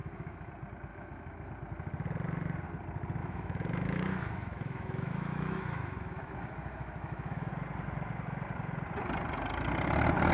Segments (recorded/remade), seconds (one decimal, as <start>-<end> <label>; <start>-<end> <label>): 0.0-0.5 remade; 0.5-0.9 recorded; 0.9-1.5 remade; 1.5-3.2 recorded; 3.2-7.5 remade; 7.5-10.3 recorded